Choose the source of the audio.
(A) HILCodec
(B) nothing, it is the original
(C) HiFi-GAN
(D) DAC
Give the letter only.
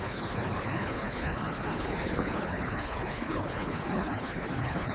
A